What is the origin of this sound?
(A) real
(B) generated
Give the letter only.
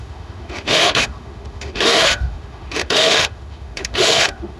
B